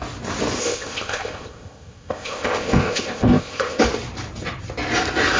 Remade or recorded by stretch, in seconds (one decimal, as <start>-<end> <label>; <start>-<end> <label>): 0.0-0.6 recorded; 0.6-3.8 remade; 3.8-5.4 recorded